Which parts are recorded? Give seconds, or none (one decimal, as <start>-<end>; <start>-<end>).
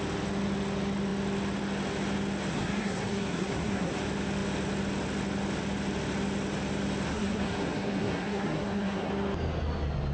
0.0-2.5; 3.9-7.1; 9.1-10.1